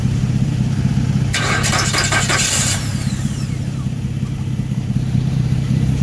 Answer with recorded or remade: remade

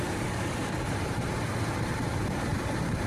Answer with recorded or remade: remade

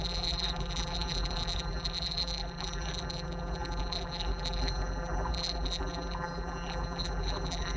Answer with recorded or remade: remade